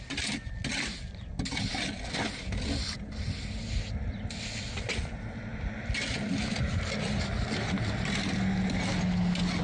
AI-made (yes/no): no